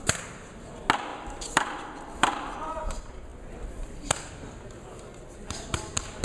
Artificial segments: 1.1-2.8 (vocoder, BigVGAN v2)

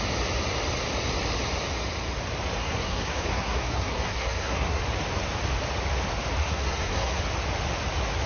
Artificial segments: 2.6-4.8 (codec, SNAC); 6.4-7.2